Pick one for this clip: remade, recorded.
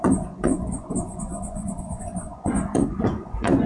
remade